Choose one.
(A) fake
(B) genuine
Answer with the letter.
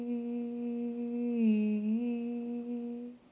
B